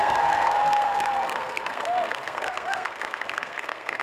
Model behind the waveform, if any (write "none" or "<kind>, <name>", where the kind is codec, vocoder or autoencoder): codec, SNAC